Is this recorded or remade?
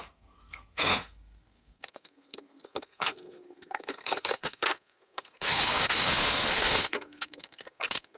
remade